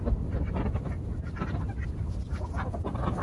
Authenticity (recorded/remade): recorded